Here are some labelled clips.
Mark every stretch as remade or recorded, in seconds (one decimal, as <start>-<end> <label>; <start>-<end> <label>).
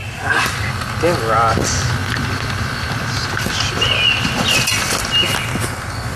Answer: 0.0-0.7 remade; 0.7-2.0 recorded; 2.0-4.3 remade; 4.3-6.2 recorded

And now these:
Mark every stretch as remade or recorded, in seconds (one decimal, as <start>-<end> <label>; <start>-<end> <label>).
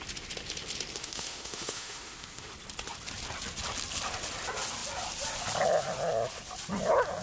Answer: 0.0-1.0 recorded; 1.0-2.5 remade; 2.5-7.2 recorded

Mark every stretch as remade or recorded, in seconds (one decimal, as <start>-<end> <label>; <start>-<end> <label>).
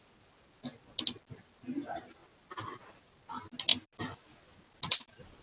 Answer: 0.0-5.4 recorded